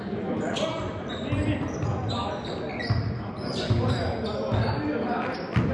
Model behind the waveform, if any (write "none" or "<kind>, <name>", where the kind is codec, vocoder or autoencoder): none